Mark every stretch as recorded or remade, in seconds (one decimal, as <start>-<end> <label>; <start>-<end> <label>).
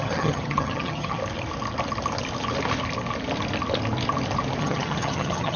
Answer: 0.0-1.2 remade; 1.2-4.6 recorded; 4.6-5.6 remade